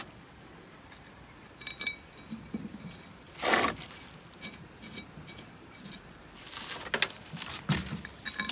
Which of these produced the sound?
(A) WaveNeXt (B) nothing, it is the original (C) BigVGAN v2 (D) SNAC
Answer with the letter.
B